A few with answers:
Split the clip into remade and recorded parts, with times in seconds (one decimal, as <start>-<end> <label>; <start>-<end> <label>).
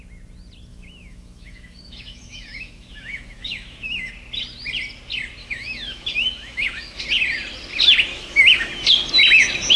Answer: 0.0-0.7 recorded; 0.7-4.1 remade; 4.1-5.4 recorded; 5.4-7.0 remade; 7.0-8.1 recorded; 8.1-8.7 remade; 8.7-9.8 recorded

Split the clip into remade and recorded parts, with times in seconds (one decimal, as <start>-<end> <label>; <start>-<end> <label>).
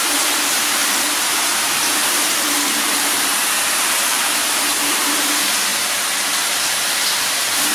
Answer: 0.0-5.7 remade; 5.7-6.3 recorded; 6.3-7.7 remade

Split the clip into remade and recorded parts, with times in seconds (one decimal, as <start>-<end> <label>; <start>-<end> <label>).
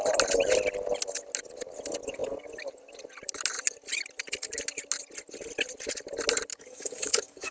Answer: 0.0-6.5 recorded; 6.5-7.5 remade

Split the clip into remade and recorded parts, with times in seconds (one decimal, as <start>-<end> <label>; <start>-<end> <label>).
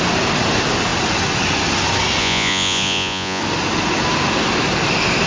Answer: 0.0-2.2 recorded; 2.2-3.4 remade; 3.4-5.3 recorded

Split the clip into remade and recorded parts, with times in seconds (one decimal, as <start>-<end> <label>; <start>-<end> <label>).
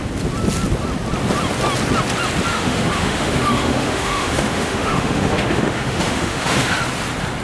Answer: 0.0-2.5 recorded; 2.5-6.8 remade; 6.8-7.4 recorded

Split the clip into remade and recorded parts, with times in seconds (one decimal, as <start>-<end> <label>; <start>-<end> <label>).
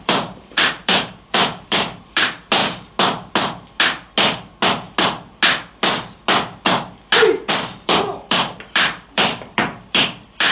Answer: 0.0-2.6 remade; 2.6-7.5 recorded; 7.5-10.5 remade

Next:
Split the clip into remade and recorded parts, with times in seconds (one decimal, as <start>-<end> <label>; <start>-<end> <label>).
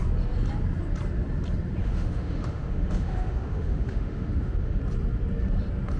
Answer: 0.0-1.8 recorded; 1.8-4.8 remade; 4.8-6.0 recorded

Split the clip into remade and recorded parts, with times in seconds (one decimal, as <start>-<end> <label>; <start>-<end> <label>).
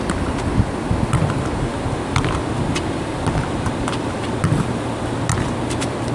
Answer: 0.0-6.1 recorded